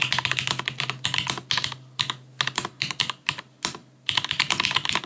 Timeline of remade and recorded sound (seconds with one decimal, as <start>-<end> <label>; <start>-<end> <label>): 0.0-5.1 recorded